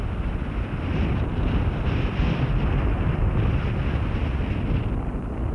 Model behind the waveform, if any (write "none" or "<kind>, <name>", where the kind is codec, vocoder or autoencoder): none